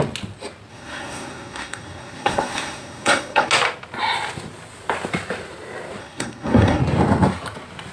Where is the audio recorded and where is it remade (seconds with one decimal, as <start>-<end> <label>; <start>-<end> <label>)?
0.0-0.7 recorded; 0.7-3.5 remade; 3.5-6.0 recorded; 6.0-6.8 remade; 6.8-7.9 recorded